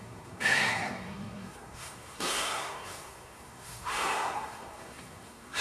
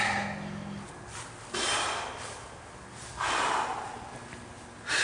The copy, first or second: first